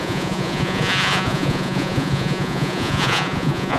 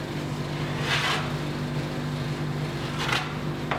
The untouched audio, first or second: second